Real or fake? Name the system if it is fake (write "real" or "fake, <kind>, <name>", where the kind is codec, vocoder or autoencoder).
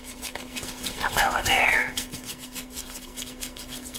fake, codec, SNAC